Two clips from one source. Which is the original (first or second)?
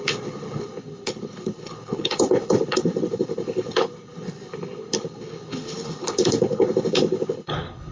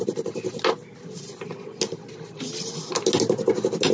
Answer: second